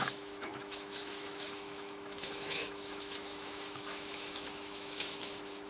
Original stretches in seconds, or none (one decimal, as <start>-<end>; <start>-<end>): none